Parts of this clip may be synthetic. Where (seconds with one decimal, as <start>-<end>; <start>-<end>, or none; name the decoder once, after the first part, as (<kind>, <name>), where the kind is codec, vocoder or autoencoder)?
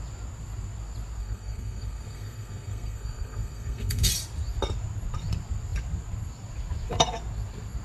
1.2-4.1 (codec, SNAC)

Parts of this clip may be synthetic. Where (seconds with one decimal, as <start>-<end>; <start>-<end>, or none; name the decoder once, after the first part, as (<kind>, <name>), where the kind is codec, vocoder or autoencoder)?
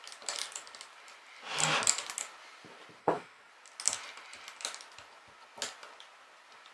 3.0-3.5 (codec, SNAC)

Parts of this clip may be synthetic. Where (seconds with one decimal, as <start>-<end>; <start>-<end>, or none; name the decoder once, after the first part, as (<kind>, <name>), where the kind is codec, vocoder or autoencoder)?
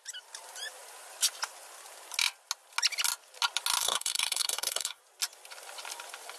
3.8-5.0 (codec, SNAC)